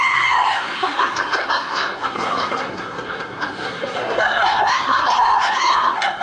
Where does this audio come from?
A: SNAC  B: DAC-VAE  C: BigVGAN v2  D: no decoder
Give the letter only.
A